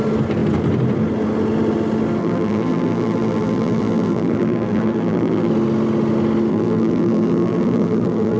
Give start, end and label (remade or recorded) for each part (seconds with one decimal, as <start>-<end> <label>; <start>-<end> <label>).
0.0-2.2 recorded; 2.2-5.5 remade; 5.5-6.5 recorded; 6.5-8.4 remade